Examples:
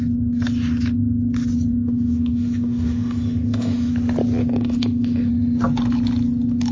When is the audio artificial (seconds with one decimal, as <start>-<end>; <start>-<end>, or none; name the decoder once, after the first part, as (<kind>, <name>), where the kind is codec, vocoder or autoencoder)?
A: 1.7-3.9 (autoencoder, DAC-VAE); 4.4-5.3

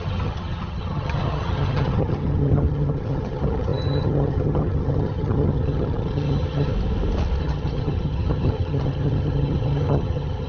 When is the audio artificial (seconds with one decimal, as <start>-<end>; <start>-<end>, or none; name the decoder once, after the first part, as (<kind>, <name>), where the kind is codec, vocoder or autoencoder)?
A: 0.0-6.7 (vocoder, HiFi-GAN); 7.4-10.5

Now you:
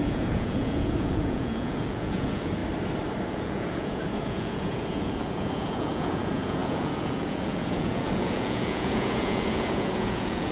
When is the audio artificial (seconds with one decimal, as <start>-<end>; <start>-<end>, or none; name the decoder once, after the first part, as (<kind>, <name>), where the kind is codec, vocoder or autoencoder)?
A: 0.0-2.6 (vocoder, Vocos); 3.3-10.5

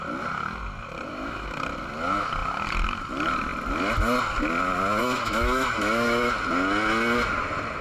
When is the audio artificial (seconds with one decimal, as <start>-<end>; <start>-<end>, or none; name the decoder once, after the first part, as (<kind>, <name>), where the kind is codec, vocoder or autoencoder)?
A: 1.1-1.6 (autoencoder, DAC-VAE); 5.0-6.3

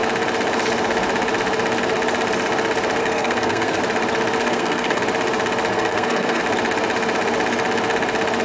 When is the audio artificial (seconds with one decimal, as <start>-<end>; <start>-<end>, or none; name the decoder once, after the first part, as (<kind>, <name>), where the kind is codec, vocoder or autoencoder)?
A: 3.0-3.8 (codec, SNAC); 4.4-5.0; 5.7-6.4